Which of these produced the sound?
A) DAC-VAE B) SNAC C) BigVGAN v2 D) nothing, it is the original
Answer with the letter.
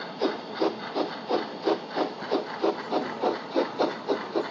D